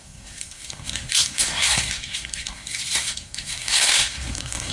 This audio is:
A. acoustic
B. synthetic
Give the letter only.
B